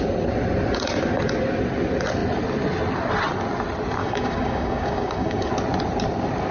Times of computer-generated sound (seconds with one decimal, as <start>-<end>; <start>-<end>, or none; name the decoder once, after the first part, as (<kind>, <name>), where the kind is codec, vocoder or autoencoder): 4.0-5.5 (codec, DAC)